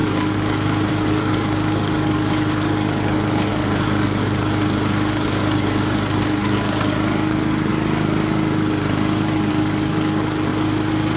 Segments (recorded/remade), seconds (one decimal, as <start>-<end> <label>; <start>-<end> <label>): 0.0-7.7 remade; 7.7-9.5 recorded; 9.5-10.5 remade; 10.5-11.2 recorded